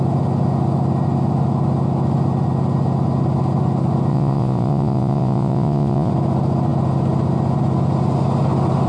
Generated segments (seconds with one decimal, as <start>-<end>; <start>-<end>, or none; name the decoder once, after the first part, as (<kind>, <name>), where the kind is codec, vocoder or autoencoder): 4.1-6.1 (vocoder, Vocos)